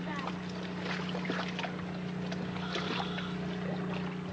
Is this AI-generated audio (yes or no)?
no